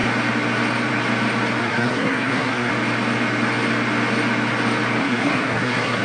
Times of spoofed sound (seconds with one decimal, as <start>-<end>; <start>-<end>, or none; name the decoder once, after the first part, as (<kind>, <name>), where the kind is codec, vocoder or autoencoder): 1.6-2.7 (codec, SNAC); 5.0-6.0